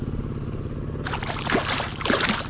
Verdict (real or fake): real